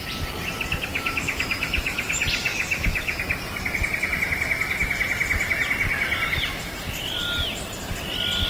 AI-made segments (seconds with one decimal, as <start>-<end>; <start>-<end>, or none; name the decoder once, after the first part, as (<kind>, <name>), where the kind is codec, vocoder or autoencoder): 0.9-2.1 (autoencoder, DAC-VAE); 2.5-3.2

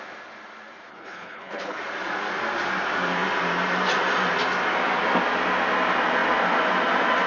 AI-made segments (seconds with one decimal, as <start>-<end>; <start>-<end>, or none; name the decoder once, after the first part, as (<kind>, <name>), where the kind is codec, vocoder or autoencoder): 0.9-1.8 (codec, HILCodec)

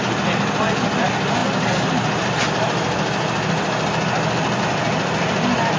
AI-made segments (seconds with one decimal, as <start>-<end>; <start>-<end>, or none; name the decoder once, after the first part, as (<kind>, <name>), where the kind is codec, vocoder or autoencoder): none

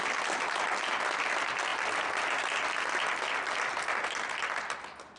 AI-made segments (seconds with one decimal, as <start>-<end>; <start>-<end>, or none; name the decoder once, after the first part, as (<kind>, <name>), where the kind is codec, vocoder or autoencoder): none

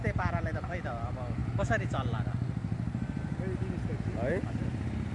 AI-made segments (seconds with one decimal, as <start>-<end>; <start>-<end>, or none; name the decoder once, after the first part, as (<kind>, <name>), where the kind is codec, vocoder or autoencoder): none